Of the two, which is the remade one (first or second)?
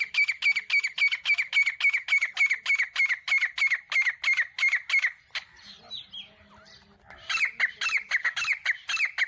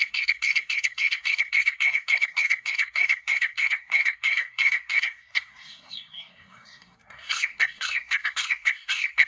second